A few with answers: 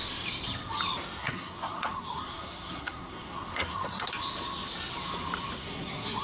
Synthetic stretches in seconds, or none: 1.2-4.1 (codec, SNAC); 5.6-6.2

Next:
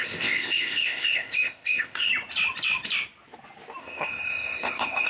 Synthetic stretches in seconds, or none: 0.0-2.1 (codec, ZipCodec); 3.8-5.1